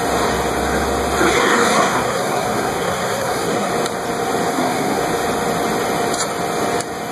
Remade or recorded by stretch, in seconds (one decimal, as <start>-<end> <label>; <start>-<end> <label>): 0.0-1.3 recorded; 1.3-3.7 remade; 3.7-4.5 recorded; 4.5-5.0 remade; 5.0-7.1 recorded